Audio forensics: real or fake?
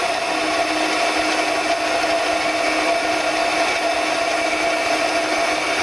real